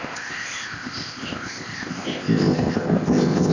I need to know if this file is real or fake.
fake